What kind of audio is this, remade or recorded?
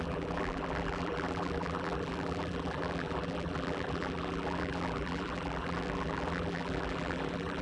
remade